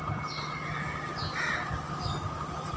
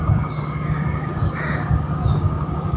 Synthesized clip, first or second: second